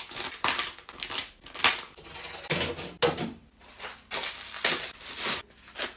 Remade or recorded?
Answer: recorded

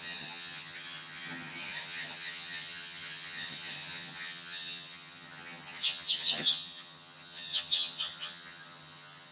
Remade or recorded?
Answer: remade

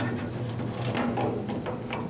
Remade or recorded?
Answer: recorded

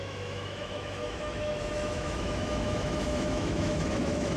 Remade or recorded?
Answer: remade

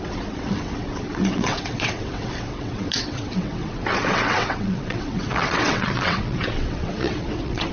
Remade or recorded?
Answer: remade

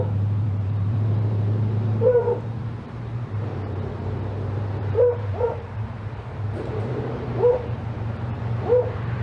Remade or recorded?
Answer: remade